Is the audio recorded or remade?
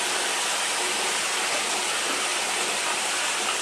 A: recorded